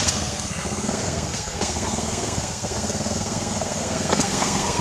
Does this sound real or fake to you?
fake